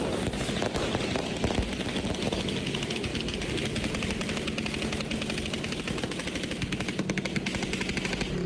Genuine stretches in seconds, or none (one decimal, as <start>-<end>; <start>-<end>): 0.0-8.5